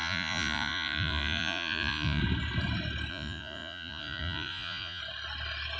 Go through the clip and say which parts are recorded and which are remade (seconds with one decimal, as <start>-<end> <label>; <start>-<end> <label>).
0.0-2.2 remade; 2.2-3.1 recorded; 3.1-5.0 remade; 5.0-5.8 recorded